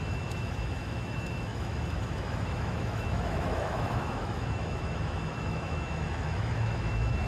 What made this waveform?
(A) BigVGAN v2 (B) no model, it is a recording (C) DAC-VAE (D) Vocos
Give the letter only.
C